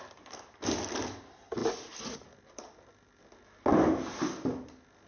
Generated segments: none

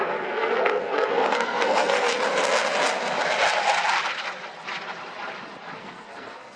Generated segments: 0.0-2.1 (codec, SNAC); 5.8-6.6

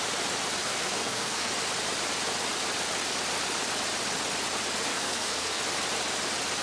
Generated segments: 0.6-1.5 (codec, SNAC); 4.9-5.6

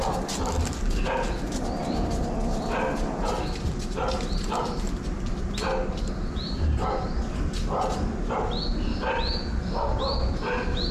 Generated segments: none

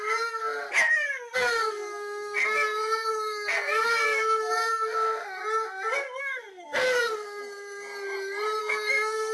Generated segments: 0.0-0.4 (codec, SNAC); 0.9-5.4; 6.2-7.4; 8.6-9.3

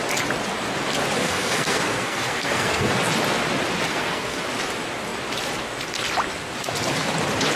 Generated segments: 1.2-2.9 (codec, SNAC); 3.9-4.4

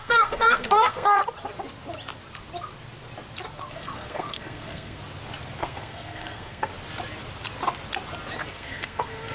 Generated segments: 0.0-1.2 (codec, SNAC); 3.7-5.0; 5.6-6.7; 8.5-9.3

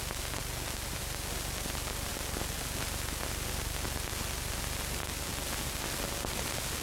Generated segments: none